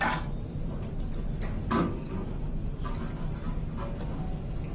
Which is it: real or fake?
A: real